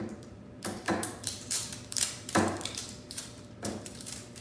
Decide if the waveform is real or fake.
fake